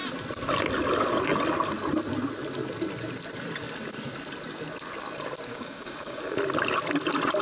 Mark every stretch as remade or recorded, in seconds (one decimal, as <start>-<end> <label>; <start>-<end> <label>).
0.0-5.5 recorded; 5.5-6.4 remade; 6.4-7.4 recorded